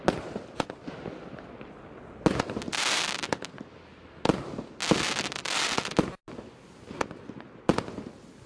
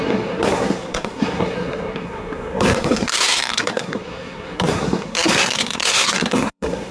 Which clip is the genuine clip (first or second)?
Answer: first